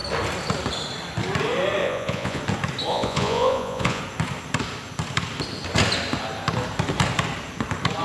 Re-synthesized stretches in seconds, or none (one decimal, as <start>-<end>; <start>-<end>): 1.8-2.4; 2.9-4.0